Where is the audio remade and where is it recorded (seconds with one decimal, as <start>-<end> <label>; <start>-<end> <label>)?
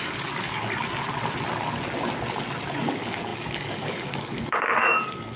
0.0-0.8 remade; 0.8-2.7 recorded; 2.7-5.4 remade